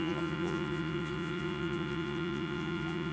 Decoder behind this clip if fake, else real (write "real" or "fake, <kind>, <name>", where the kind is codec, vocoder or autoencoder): fake, vocoder, Vocos